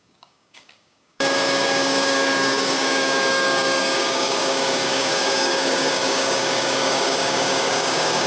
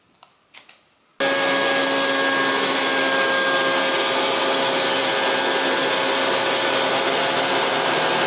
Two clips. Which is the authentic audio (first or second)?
second